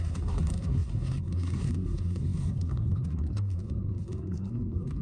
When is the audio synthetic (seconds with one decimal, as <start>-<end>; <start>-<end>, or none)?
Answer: 0.0-5.0

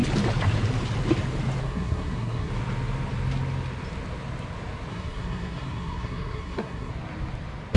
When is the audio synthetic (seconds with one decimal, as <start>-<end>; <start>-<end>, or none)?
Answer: 1.6-2.5; 4.9-6.9

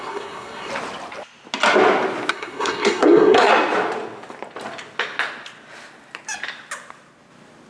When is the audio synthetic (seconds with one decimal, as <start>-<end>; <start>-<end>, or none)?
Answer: 0.0-0.7; 2.3-3.5

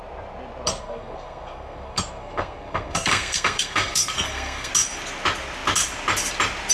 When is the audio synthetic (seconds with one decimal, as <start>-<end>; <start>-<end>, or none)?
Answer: 0.7-4.7

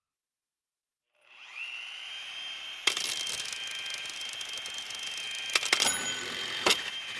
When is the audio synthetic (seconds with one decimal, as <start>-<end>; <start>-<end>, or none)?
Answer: none

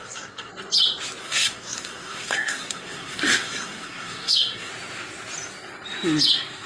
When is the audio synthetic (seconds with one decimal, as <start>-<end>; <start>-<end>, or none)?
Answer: 0.0-0.5; 1.2-4.7